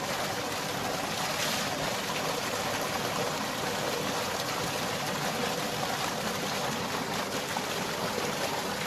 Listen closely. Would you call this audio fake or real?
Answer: real